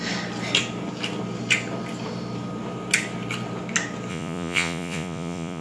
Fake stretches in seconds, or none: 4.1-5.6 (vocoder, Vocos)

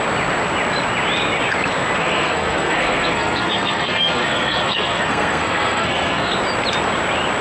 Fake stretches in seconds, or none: 2.0-6.3 (codec, SNAC)

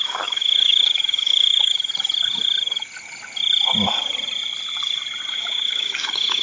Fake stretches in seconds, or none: 0.0-1.9 (autoencoder, DAC-VAE); 5.3-6.4

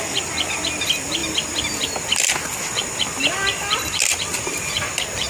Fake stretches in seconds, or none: none

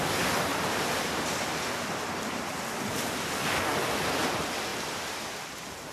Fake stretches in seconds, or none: 0.5-2.8 (vocoder, BigVGAN v2); 4.7-5.3

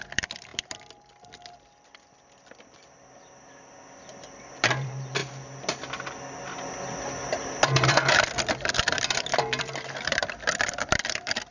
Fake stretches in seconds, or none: 0.0-5.2 (vocoder, BigVGAN v2); 6.6-11.5

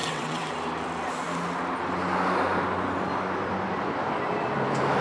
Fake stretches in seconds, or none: 0.0-0.5 (vocoder, WaveNeXt)